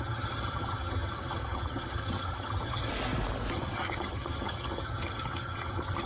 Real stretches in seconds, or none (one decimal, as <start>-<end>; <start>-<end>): 2.9-3.5